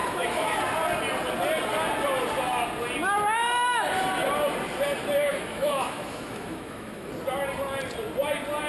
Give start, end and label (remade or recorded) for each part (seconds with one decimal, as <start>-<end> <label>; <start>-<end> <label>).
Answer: 0.0-0.6 remade; 0.6-5.2 recorded; 5.2-7.1 remade; 7.1-8.7 recorded

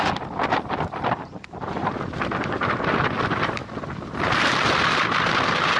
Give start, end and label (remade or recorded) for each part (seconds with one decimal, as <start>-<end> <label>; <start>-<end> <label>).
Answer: 0.0-3.6 remade; 3.6-4.2 recorded; 4.2-5.8 remade